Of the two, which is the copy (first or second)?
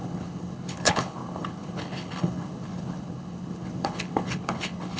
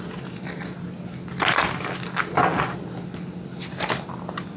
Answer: first